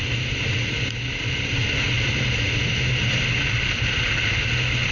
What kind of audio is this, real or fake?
real